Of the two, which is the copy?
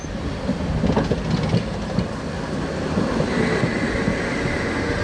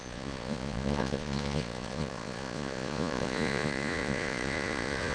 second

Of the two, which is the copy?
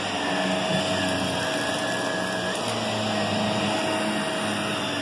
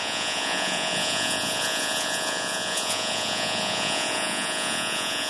second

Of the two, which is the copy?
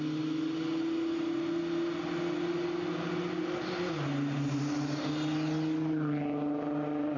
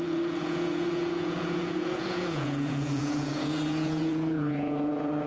second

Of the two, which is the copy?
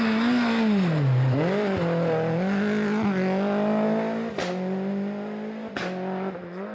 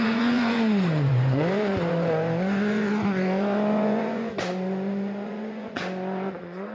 second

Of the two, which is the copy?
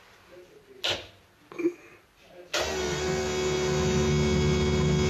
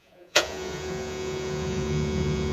second